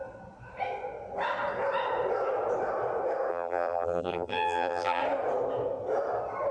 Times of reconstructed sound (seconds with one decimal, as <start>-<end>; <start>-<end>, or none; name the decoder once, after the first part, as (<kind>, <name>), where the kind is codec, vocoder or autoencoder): 3.3-5.0 (vocoder, BigVGAN v2)